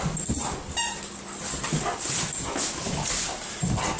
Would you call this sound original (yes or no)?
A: yes